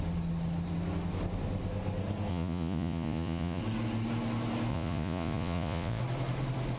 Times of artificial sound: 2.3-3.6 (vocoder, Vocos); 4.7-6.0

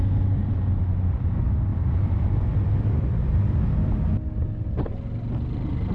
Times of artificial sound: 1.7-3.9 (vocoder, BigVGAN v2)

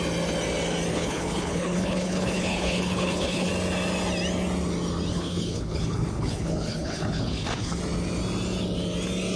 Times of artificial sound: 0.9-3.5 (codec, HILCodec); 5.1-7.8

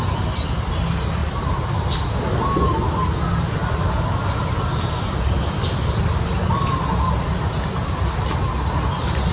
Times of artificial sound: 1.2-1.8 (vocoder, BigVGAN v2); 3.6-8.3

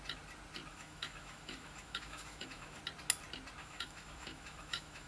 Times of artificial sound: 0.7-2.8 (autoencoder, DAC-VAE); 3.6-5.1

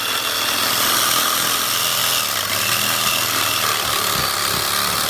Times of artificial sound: none

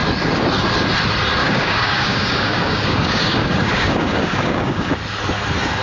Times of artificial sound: 1.4-4.9 (codec, DAC)

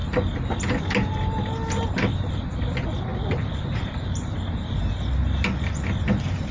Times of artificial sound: 3.1-4.0 (vocoder, BigVGAN v2)